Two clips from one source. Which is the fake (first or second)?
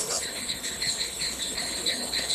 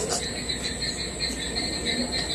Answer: first